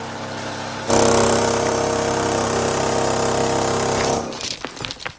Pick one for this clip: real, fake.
real